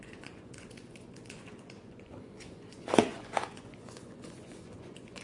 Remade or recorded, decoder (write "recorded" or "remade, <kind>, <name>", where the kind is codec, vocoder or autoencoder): remade, vocoder, Vocos